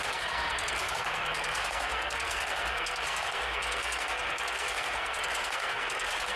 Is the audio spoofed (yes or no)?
yes